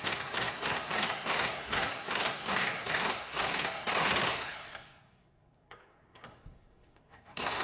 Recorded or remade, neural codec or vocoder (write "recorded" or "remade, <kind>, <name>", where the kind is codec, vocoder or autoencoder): remade, codec, SNAC